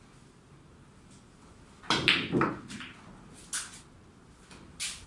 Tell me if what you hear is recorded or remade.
recorded